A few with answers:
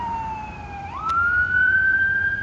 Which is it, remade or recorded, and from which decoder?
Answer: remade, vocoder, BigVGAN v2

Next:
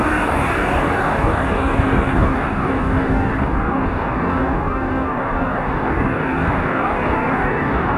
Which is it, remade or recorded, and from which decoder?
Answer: remade, codec, DAC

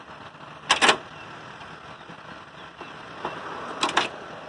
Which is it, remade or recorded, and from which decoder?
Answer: recorded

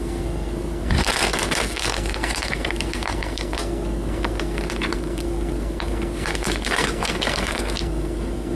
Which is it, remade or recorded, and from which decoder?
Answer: remade, codec, SNAC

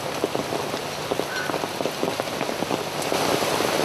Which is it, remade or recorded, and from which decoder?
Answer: recorded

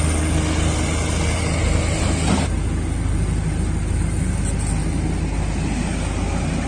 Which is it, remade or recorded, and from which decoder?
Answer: recorded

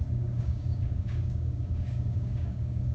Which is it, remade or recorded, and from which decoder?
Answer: remade, codec, DAC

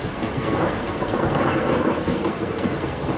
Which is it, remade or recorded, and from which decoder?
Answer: remade, codec, SNAC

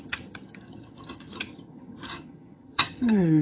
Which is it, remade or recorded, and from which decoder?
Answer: remade, vocoder, HiFi-GAN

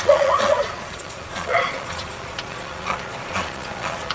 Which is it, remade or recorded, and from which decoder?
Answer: remade, vocoder, Vocos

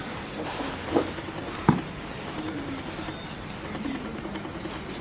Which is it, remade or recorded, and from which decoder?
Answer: recorded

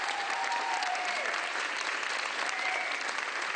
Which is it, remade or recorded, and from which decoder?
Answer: remade, vocoder, BigVGAN v2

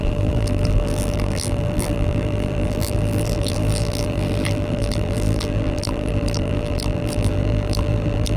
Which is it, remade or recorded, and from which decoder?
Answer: remade, vocoder, BigVGAN v2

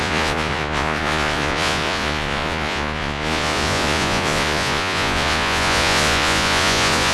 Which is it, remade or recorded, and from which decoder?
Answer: remade, vocoder, Vocos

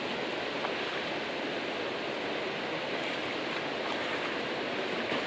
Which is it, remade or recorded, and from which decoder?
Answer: recorded